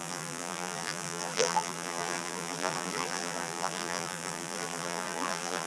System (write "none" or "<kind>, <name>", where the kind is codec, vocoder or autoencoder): vocoder, BigVGAN v2